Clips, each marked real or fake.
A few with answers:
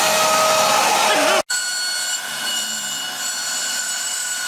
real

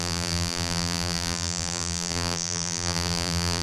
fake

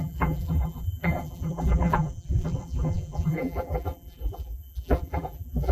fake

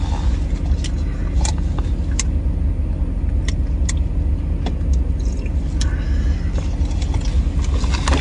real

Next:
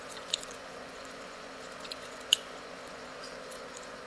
fake